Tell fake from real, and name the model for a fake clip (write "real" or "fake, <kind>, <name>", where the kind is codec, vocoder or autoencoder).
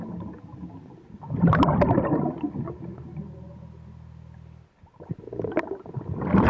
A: real